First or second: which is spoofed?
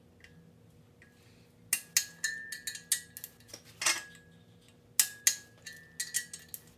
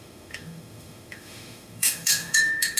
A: second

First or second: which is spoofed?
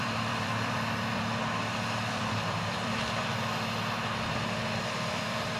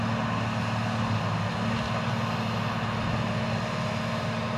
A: first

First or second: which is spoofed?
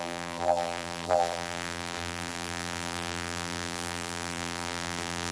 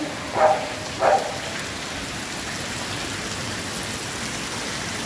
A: first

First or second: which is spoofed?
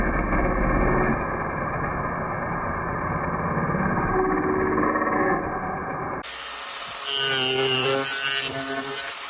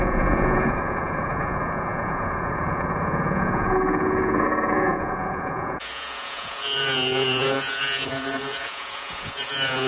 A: second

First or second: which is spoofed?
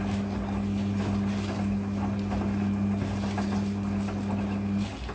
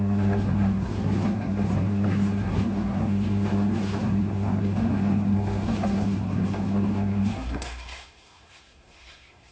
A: second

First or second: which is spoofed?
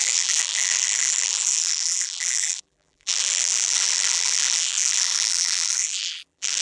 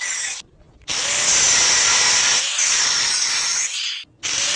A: first